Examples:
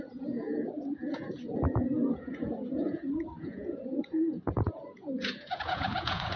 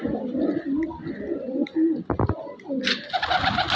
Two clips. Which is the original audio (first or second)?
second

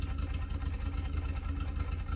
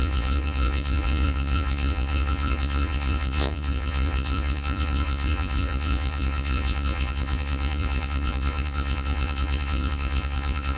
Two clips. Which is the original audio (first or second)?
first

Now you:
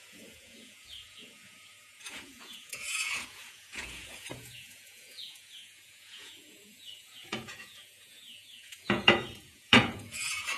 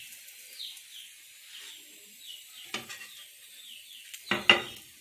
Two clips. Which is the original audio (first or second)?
second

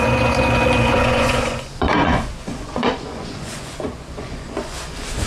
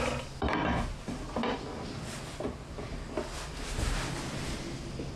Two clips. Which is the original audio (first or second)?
second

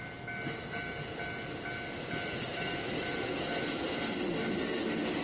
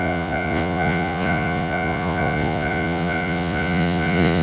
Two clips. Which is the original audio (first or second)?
first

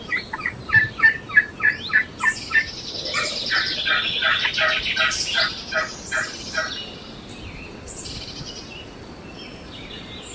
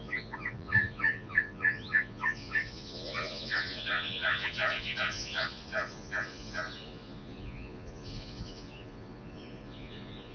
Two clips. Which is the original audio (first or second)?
first